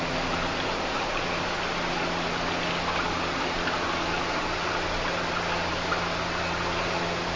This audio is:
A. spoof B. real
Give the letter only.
B